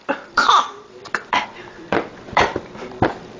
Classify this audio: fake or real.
fake